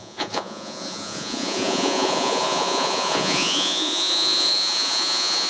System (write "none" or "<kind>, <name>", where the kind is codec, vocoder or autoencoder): vocoder, Vocos